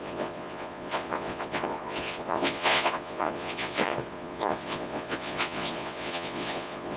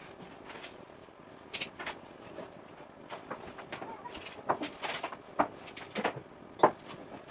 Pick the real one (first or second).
second